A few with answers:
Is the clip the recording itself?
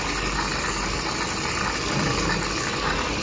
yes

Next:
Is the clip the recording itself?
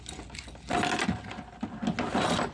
yes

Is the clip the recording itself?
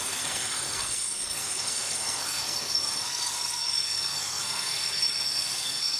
no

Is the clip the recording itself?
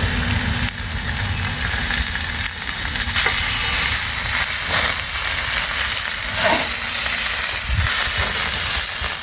yes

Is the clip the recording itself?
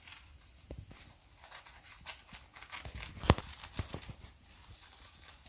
yes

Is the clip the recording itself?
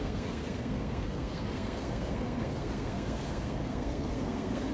no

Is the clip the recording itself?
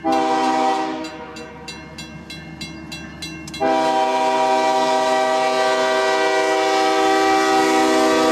yes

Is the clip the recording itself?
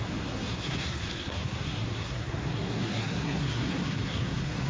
no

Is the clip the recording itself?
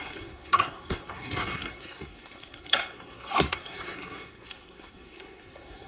no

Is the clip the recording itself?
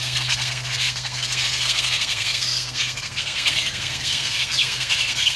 no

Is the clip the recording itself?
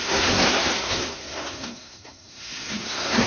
no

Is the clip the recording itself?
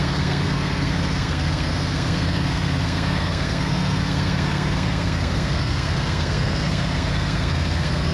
no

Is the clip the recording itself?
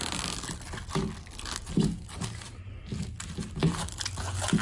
yes